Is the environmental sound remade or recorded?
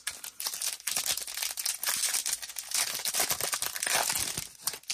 recorded